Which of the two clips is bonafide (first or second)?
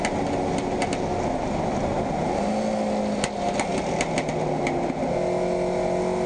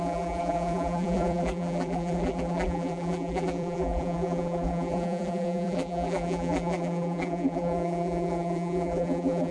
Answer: first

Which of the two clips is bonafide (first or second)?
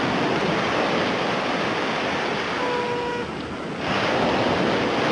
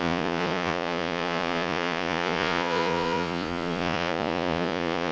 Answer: first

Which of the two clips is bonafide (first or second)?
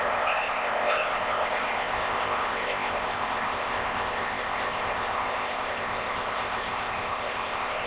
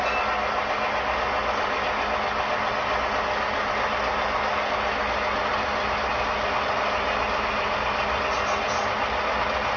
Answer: second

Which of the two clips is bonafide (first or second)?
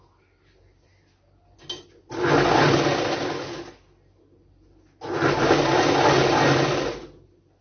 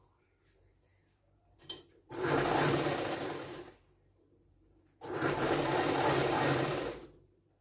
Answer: first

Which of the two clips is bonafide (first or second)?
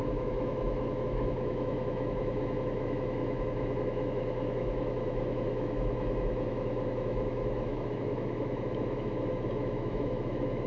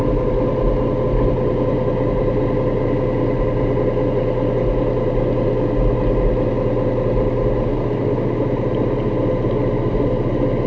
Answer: second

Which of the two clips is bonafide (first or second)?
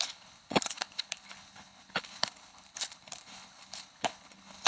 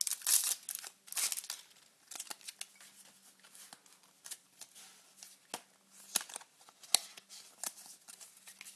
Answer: second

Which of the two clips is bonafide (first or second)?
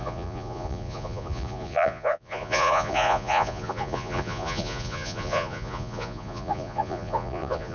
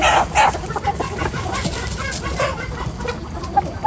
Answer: second